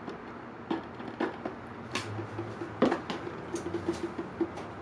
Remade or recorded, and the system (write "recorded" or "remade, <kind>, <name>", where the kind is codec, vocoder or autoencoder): recorded